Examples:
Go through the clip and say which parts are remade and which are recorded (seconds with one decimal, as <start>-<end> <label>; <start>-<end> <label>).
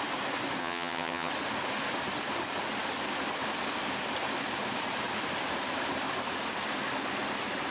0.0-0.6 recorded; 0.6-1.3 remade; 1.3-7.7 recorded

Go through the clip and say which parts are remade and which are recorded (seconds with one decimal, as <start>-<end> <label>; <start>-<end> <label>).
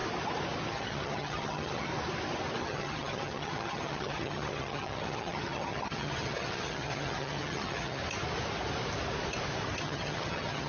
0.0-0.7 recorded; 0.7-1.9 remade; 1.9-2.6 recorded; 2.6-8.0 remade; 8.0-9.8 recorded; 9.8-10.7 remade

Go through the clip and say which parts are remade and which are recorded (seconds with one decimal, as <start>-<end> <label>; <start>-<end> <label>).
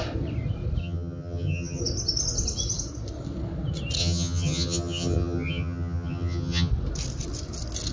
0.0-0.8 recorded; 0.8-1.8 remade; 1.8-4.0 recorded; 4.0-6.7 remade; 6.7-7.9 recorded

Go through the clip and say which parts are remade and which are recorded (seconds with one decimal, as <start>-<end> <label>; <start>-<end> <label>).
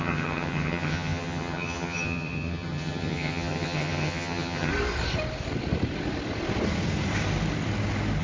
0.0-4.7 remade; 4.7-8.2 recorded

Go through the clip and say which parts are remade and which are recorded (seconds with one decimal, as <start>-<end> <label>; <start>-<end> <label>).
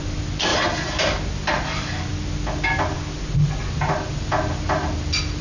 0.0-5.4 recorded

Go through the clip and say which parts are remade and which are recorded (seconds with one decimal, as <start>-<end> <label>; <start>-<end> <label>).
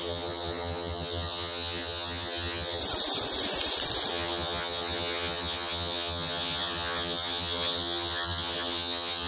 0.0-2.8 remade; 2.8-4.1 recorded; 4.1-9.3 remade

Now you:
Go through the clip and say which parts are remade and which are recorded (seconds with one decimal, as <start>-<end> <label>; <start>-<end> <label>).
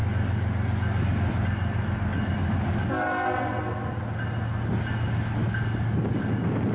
0.0-6.7 recorded